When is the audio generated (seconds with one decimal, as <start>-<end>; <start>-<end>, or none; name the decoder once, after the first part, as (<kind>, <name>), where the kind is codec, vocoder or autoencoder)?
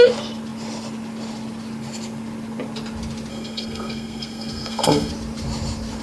3.3-5.1 (codec, SNAC)